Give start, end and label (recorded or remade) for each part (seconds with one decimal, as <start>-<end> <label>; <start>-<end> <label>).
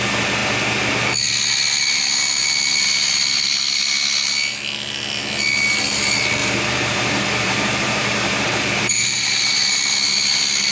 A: 0.0-6.4 recorded; 6.4-9.8 remade; 9.8-10.7 recorded